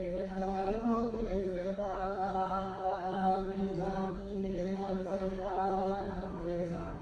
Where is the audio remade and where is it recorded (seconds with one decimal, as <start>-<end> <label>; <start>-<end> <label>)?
0.0-3.6 remade; 3.6-4.1 recorded; 4.1-7.0 remade